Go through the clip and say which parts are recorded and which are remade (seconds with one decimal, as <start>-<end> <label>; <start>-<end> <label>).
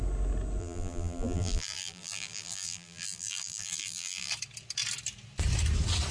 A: 0.0-0.6 recorded; 0.6-4.3 remade; 4.3-6.1 recorded